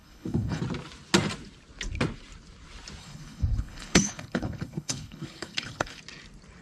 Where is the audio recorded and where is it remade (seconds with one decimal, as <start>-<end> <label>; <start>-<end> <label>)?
0.0-0.6 remade; 0.6-3.0 recorded; 3.0-6.0 remade; 6.0-6.6 recorded